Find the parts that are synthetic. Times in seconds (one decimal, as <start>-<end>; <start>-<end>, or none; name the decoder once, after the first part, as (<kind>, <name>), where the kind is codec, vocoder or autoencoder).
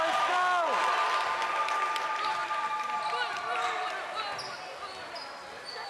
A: none